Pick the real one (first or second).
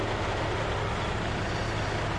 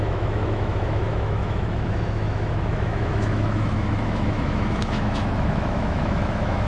first